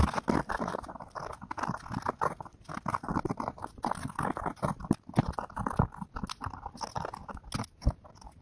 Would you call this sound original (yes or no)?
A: yes